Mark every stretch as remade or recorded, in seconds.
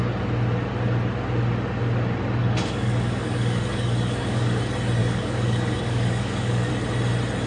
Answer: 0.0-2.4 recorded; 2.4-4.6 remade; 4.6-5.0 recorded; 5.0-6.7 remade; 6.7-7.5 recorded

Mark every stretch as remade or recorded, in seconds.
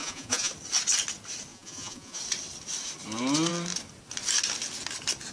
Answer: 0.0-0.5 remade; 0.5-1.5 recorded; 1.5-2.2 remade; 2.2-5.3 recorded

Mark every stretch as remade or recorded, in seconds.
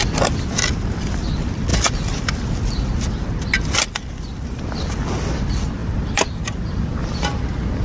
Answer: 0.0-5.8 recorded; 5.8-7.0 remade; 7.0-7.8 recorded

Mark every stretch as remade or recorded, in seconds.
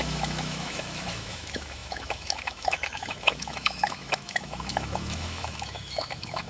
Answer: 0.0-6.5 remade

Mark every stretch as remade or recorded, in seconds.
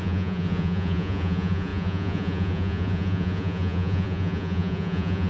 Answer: 0.0-5.3 remade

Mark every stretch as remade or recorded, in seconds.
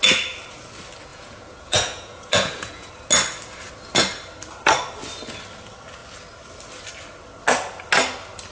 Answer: 0.0-1.1 recorded; 1.1-2.9 remade; 2.9-8.5 recorded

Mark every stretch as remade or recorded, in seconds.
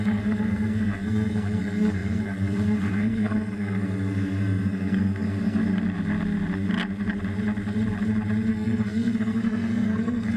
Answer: 0.0-5.6 remade; 5.6-8.5 recorded; 8.5-10.4 remade